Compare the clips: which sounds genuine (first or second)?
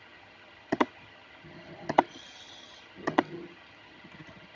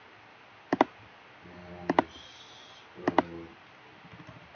second